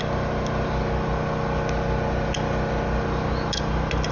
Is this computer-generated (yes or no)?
no